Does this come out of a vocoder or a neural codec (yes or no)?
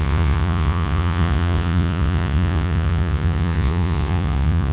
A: yes